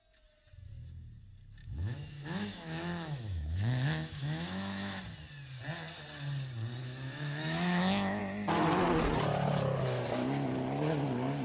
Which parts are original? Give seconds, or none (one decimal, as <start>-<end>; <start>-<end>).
0.0-1.6; 5.0-6.8; 8.2-11.4